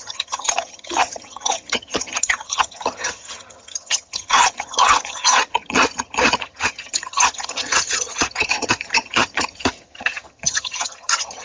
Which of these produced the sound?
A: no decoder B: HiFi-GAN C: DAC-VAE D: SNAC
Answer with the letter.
B